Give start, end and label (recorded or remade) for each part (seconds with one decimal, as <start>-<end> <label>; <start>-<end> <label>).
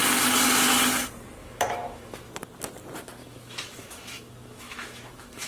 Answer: 0.0-1.4 recorded; 1.4-2.3 remade; 2.3-3.2 recorded; 3.2-5.5 remade